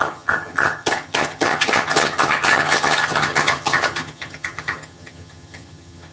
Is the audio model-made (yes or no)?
yes